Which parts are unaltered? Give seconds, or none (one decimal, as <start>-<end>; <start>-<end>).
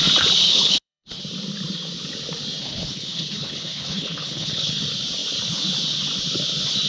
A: 0.0-0.4; 1.2-2.6; 4.7-6.9